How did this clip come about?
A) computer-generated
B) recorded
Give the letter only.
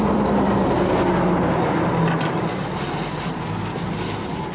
B